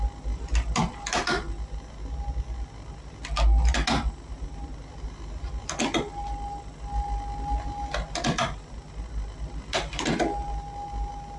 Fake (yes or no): no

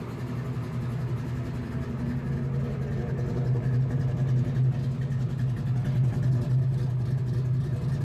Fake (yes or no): no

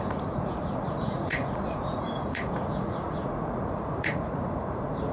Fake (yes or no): yes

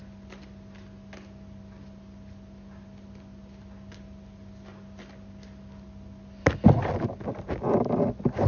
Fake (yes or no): no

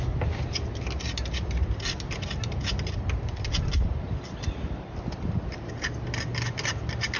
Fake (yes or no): no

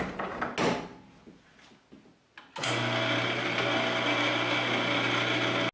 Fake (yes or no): no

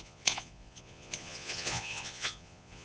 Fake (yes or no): yes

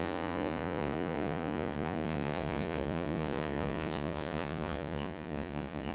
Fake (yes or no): yes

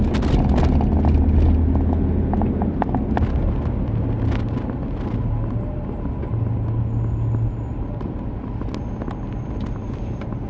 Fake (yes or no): no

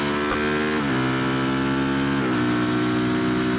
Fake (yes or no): no